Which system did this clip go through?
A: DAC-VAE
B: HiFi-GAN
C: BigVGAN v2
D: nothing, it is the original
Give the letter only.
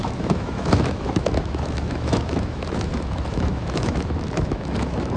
A